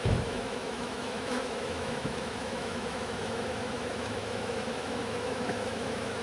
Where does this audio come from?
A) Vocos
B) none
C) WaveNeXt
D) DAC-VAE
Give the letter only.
D